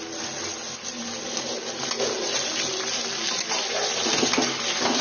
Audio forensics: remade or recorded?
recorded